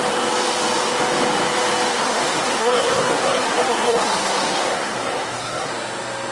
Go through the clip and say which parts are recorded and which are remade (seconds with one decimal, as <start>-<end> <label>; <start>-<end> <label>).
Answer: 0.0-1.9 recorded; 1.9-5.7 remade; 5.7-6.3 recorded